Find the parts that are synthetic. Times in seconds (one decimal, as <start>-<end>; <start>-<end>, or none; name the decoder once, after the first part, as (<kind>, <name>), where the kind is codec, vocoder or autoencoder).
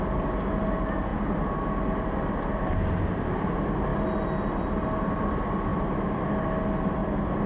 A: none